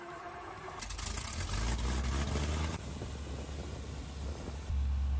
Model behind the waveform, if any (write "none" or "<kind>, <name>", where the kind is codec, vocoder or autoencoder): none